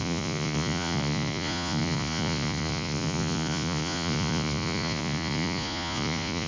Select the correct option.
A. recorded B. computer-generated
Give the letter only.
B